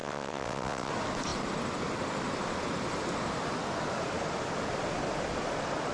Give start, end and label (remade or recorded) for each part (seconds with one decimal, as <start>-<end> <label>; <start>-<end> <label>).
0.0-0.9 remade; 0.9-5.9 recorded